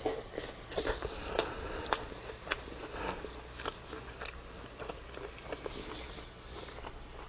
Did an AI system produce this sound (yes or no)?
no